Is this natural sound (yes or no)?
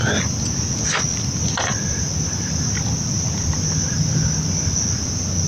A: yes